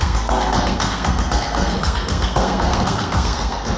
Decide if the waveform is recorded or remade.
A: remade